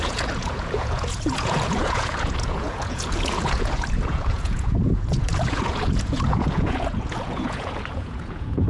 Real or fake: fake